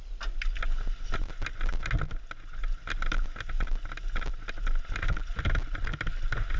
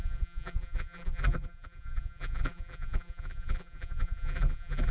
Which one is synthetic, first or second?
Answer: second